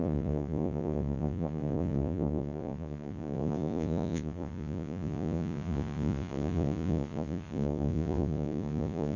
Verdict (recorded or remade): remade